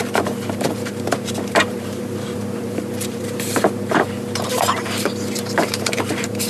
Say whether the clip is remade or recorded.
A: remade